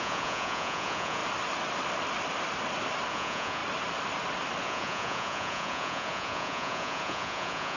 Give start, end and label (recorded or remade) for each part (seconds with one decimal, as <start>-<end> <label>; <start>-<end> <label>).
0.0-1.2 remade; 1.2-3.1 recorded; 3.1-3.6 remade; 3.6-4.6 recorded; 4.6-7.8 remade